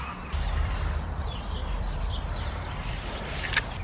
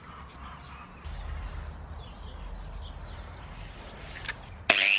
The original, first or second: second